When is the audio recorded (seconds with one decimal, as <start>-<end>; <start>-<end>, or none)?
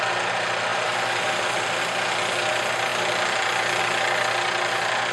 0.0-0.7; 1.8-5.1